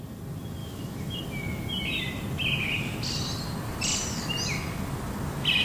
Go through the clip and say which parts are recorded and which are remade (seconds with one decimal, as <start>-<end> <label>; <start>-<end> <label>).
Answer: 0.0-0.6 recorded; 0.6-1.2 remade; 1.2-5.6 recorded